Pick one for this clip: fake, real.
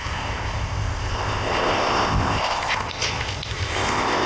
fake